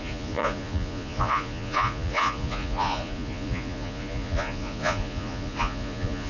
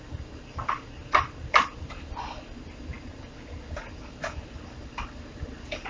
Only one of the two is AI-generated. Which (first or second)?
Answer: first